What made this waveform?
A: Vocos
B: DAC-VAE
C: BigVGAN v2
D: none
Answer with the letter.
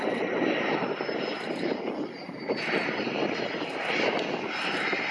D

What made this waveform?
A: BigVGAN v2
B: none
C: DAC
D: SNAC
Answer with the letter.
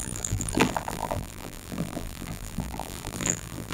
A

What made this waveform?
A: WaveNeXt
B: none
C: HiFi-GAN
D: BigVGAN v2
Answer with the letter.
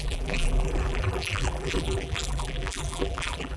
D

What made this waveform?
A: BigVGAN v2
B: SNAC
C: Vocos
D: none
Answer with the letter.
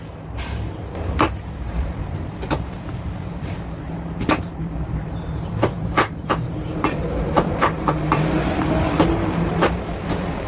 A